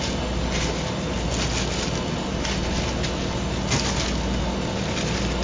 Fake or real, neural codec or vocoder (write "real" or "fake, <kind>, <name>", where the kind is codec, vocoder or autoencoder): real